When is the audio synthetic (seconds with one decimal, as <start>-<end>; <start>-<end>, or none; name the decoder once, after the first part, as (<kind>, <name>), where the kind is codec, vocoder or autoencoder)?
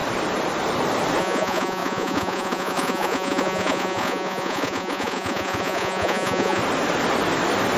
1.2-6.6 (vocoder, Vocos)